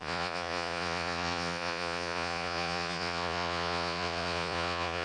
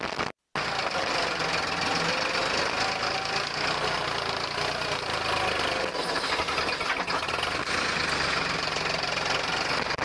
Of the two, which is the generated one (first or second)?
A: first